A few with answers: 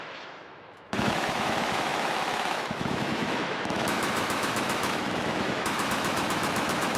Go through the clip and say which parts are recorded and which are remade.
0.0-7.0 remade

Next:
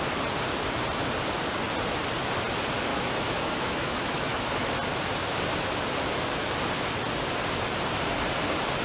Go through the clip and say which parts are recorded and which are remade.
0.0-2.9 recorded; 2.9-4.7 remade; 4.7-8.8 recorded

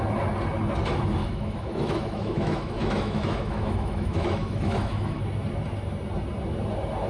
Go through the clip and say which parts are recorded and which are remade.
0.0-1.2 recorded; 1.2-5.2 remade; 5.2-7.1 recorded

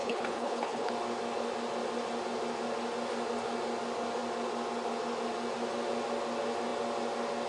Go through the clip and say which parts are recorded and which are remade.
0.0-0.9 remade; 0.9-7.5 recorded

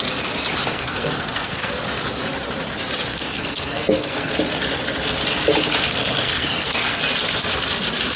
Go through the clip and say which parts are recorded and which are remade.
0.0-0.7 recorded; 0.7-1.7 remade; 1.7-3.1 recorded; 3.1-4.3 remade; 4.3-6.2 recorded; 6.2-7.0 remade; 7.0-8.2 recorded

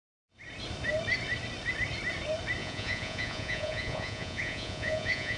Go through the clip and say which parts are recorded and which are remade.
0.0-2.6 recorded; 2.6-5.4 remade